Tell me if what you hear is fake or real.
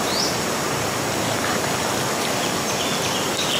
real